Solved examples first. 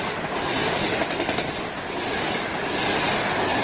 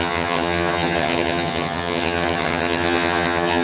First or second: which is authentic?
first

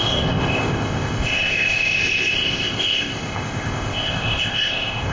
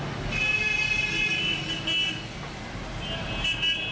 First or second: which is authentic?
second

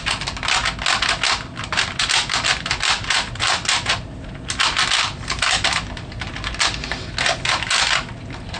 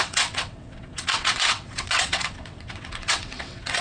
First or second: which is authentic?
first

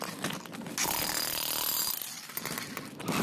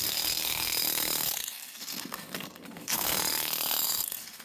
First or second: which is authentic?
first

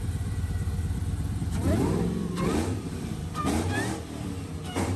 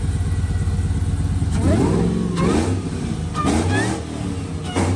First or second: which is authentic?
second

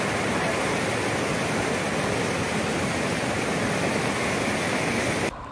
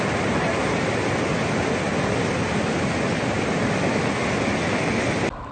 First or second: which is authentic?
second